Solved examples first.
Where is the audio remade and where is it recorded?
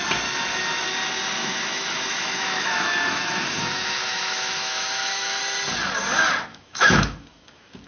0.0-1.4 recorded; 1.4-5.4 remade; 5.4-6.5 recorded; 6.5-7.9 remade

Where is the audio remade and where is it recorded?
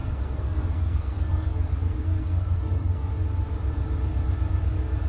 0.0-3.1 remade; 3.1-5.1 recorded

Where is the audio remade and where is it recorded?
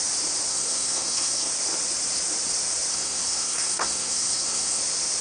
0.0-0.5 recorded; 0.5-1.5 remade; 1.5-2.9 recorded; 2.9-4.8 remade; 4.8-5.2 recorded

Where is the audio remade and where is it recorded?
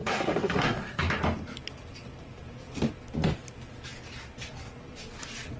0.0-1.2 remade; 1.2-5.6 recorded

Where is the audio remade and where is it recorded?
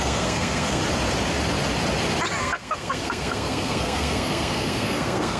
0.0-0.8 remade; 0.8-2.4 recorded; 2.4-5.4 remade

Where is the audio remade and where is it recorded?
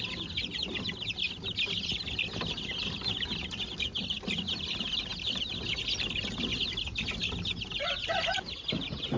0.0-9.2 recorded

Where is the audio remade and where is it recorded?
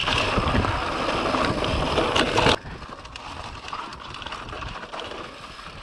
0.0-3.5 recorded; 3.5-3.9 remade; 3.9-4.6 recorded; 4.6-5.8 remade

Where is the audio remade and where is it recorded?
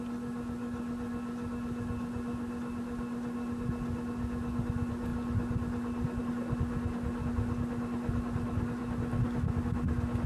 0.0-10.3 recorded